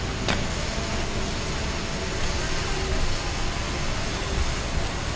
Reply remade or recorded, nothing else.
recorded